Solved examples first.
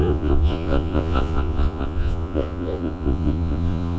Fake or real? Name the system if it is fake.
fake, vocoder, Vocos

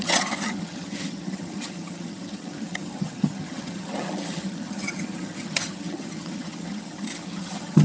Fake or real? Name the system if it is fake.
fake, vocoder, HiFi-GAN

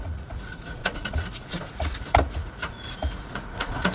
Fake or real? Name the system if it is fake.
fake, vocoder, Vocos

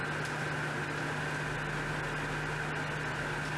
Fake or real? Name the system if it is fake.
real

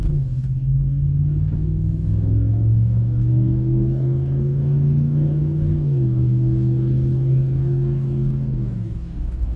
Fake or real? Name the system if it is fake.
fake, codec, DAC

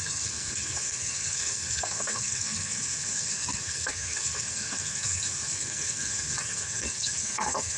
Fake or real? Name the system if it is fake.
fake, codec, SNAC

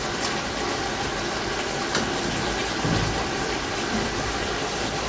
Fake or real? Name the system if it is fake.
fake, vocoder, BigVGAN v2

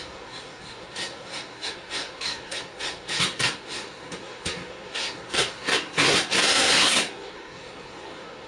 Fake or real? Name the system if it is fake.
fake, codec, SNAC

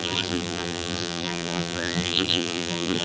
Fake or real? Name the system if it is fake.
fake, vocoder, BigVGAN v2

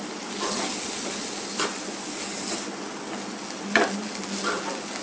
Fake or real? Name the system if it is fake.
real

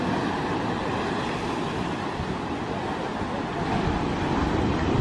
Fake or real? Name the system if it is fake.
real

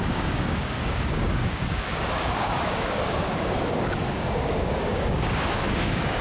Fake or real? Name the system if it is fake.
fake, codec, DAC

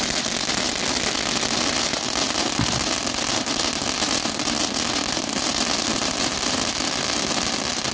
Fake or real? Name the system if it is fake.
real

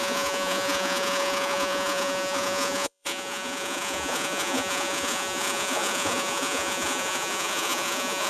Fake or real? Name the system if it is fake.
fake, vocoder, Vocos